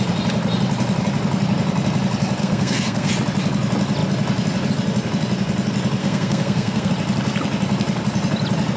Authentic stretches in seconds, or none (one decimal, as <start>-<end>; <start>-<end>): 0.0-2.4; 3.1-6.0; 6.9-8.8